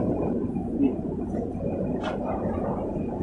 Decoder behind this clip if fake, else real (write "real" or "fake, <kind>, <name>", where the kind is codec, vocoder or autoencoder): fake, vocoder, BigVGAN v2